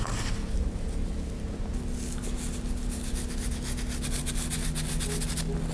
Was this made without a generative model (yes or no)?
yes